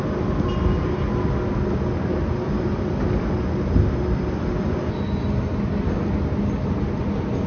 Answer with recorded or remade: recorded